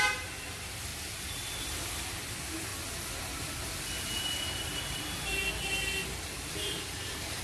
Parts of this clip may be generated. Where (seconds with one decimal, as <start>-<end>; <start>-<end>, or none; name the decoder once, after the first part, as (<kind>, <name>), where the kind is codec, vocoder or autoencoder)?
0.0-2.7 (vocoder, BigVGAN v2); 6.5-7.4